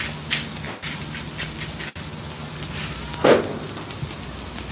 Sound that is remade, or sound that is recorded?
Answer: recorded